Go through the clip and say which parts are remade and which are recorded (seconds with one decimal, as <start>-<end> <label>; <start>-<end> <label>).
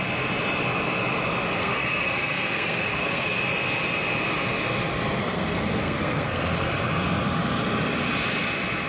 0.0-1.6 recorded; 1.6-3.4 remade; 3.4-5.2 recorded; 5.2-6.7 remade; 6.7-8.9 recorded